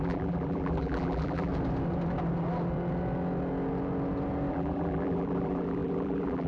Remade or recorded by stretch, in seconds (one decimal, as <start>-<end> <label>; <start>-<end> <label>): 0.0-1.5 remade; 1.5-4.5 recorded; 4.5-6.5 remade